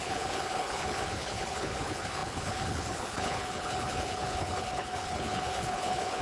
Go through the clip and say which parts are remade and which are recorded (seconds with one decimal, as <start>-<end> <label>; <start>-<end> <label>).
0.0-6.2 remade